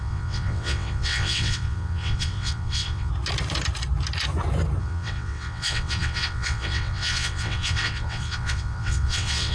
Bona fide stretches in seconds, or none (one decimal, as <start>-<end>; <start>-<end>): 3.1-4.8